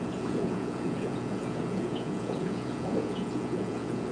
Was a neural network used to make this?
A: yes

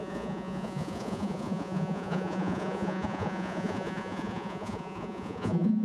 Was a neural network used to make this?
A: yes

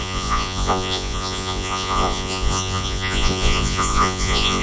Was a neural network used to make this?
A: yes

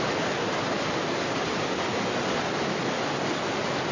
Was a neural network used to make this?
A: no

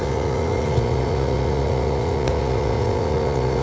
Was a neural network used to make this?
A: yes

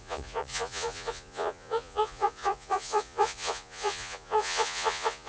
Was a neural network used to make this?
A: yes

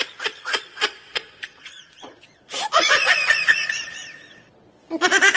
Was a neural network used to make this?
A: yes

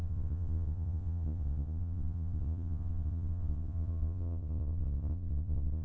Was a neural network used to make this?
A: yes